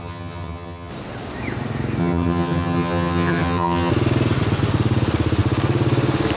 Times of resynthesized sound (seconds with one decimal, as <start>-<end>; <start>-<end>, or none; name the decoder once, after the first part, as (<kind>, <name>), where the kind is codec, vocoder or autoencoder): 0.0-0.9 (vocoder, HiFi-GAN); 2.0-3.9